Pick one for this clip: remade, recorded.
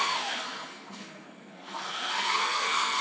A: remade